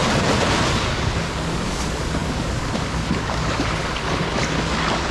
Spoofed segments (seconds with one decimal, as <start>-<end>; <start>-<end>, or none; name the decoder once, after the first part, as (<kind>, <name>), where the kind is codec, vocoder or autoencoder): 0.7-5.1 (codec, DAC)